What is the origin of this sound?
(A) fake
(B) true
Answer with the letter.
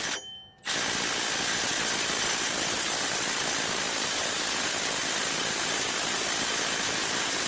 B